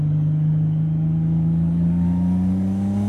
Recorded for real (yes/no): no